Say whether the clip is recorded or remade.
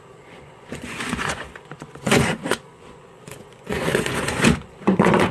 remade